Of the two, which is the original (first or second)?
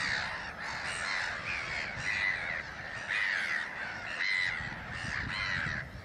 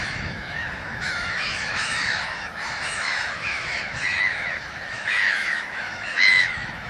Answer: first